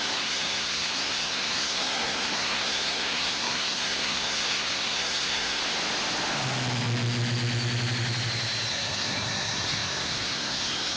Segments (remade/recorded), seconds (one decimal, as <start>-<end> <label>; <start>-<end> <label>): 0.0-5.6 remade; 5.6-8.7 recorded; 8.7-11.0 remade